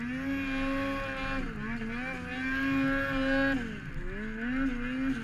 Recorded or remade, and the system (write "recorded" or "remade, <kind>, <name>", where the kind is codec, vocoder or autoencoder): recorded